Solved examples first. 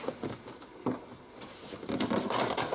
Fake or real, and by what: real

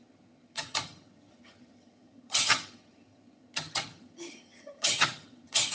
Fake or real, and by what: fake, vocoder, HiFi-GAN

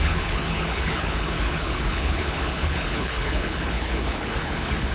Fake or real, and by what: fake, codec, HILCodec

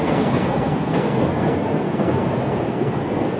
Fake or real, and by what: fake, codec, SNAC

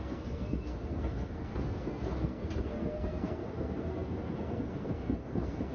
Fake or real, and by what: fake, codec, SNAC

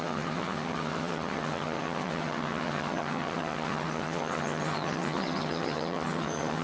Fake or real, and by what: fake, vocoder, HiFi-GAN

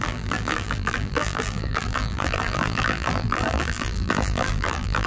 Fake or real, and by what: fake, vocoder, BigVGAN v2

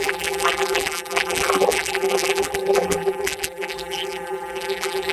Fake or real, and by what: fake, vocoder, BigVGAN v2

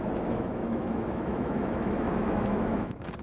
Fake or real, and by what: fake, autoencoder, DAC-VAE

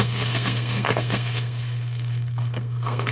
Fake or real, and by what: fake, codec, SNAC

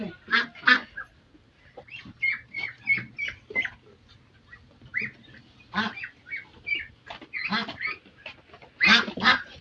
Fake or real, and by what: real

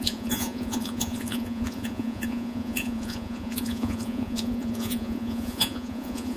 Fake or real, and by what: fake, vocoder, Vocos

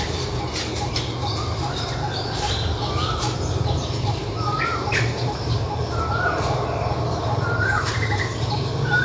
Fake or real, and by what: fake, vocoder, BigVGAN v2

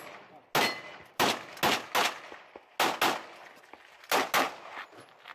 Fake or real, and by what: real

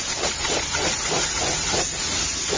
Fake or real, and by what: real